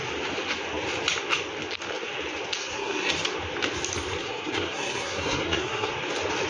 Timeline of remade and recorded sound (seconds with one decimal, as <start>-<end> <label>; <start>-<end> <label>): 0.0-2.6 recorded; 2.6-3.1 remade; 3.1-4.2 recorded; 4.2-5.9 remade; 5.9-6.5 recorded